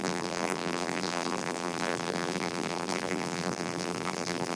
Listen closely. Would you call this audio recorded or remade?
remade